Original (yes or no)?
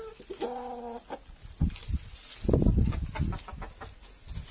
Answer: yes